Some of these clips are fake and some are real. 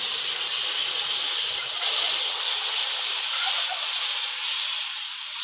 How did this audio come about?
real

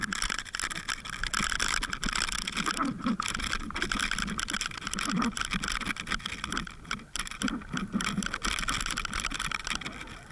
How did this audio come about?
real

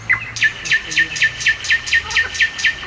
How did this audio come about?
real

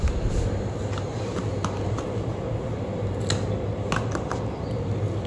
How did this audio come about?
real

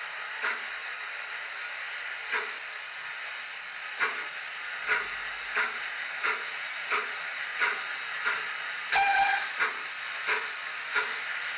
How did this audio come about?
real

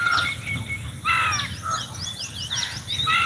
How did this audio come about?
real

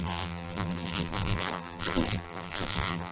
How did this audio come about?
fake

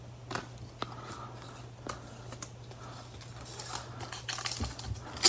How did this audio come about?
real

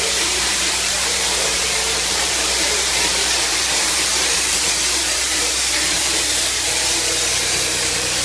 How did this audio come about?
fake